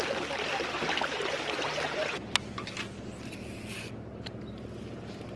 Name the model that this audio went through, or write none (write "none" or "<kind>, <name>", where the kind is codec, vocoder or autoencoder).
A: none